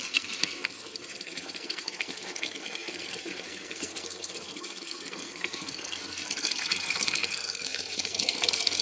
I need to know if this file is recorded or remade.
remade